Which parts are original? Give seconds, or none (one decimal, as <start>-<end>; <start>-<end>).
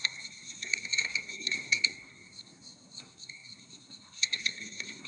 none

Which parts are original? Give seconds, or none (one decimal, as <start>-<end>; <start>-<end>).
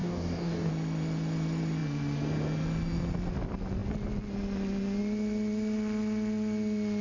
0.7-7.0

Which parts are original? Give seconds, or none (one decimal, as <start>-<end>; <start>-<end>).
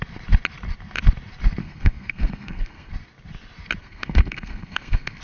0.0-1.6; 2.9-3.8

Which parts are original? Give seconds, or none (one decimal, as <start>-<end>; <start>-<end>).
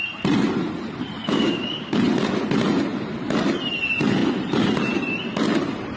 0.0-1.2; 2.0-6.0